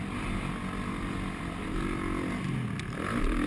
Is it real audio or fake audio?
real